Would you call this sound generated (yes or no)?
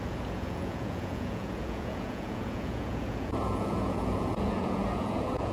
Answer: yes